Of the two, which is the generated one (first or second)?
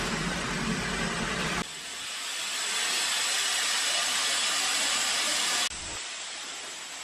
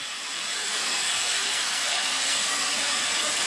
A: second